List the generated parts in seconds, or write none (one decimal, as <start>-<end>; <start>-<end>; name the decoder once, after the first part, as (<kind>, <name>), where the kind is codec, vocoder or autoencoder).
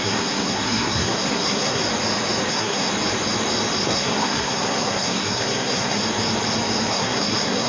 0.0-1.8 (codec, SNAC); 2.5-2.9; 3.9-6.0; 6.9-7.7